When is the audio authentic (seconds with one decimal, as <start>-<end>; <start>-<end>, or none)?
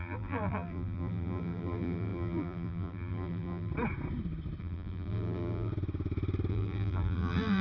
3.7-4.6; 5.7-6.5